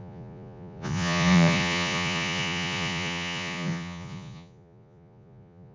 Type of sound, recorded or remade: remade